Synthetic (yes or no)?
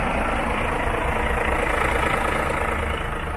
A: no